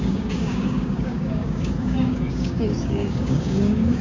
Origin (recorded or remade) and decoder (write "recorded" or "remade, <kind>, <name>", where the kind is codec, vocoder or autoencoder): remade, codec, DAC